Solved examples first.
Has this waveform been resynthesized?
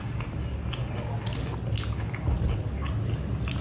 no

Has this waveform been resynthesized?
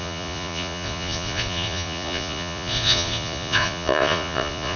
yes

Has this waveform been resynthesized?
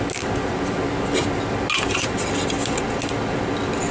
no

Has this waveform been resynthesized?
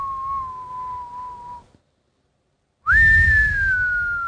no